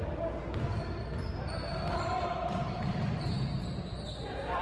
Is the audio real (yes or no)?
no